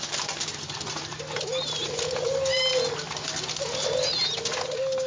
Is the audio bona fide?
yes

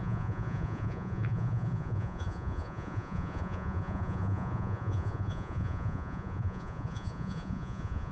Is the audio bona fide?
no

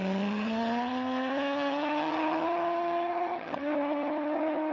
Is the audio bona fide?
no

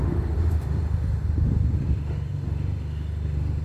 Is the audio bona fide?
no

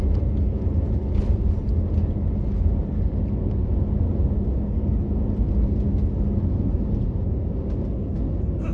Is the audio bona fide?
yes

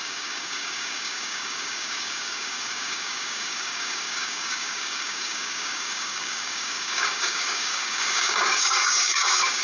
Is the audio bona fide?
no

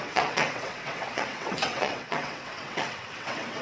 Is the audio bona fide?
no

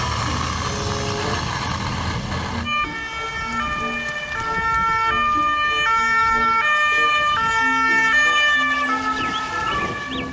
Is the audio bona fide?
yes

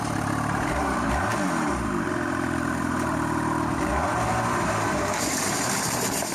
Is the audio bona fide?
no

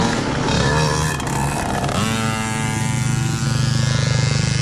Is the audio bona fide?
yes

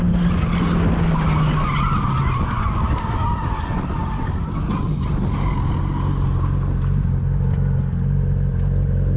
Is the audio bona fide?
yes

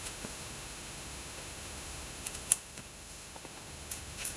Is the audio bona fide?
no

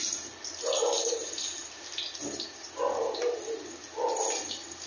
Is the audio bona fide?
yes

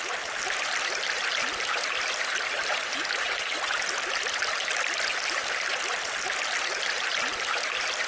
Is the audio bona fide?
yes